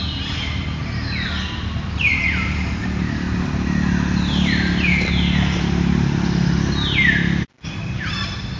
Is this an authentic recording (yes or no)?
yes